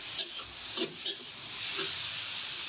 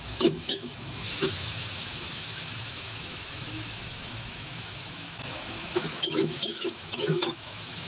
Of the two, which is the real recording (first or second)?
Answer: first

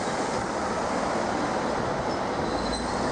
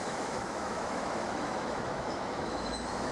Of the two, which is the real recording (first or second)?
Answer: first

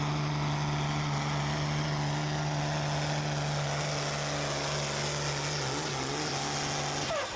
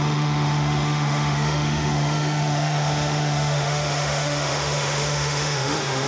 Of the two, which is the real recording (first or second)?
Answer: first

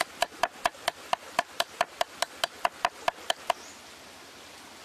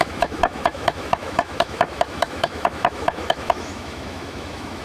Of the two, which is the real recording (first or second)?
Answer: first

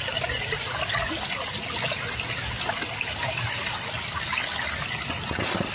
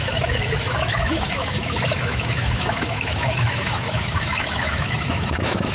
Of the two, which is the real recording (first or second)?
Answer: first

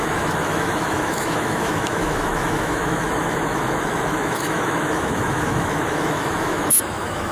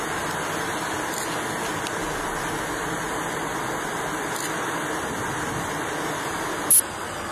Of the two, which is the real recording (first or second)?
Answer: second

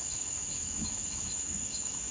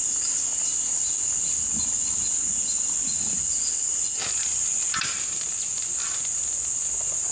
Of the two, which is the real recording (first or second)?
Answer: second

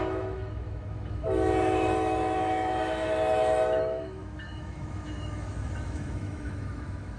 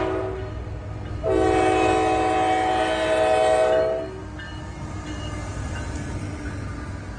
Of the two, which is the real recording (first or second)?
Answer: second